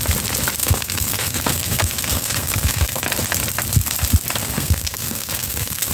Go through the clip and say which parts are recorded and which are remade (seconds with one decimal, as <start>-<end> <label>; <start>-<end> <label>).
0.0-0.6 recorded; 0.6-3.0 remade; 3.0-4.4 recorded; 4.4-5.9 remade